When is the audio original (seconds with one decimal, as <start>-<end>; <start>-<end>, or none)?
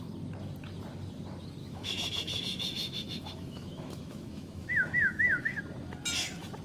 0.0-1.6; 5.6-6.6